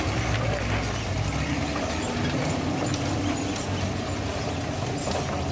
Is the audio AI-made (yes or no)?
no